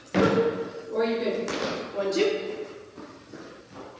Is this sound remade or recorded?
recorded